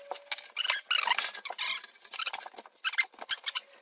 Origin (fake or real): real